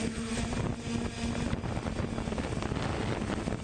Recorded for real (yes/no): yes